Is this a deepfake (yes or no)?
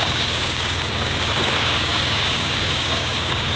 yes